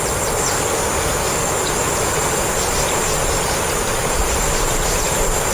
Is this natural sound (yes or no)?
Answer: yes